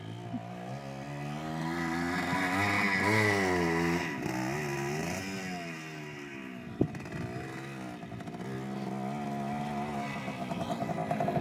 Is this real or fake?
real